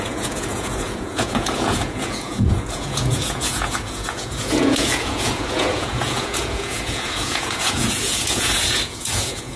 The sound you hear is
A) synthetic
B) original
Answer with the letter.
A